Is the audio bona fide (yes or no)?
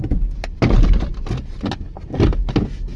yes